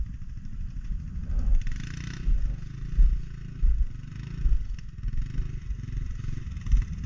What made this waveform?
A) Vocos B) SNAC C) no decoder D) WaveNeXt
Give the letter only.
C